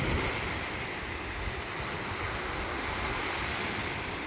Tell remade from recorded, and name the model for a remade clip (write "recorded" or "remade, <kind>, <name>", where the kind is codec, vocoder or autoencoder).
recorded